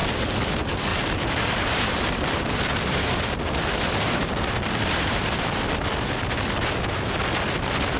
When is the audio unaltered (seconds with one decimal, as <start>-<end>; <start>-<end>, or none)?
0.0-0.9; 5.6-8.0